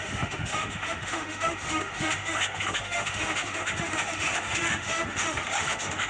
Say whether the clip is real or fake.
fake